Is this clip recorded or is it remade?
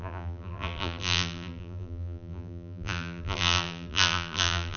remade